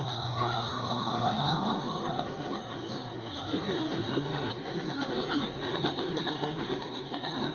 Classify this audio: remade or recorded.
remade